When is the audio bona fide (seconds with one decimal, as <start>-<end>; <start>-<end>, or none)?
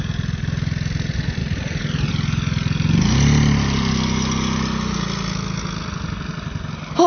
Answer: 0.0-7.1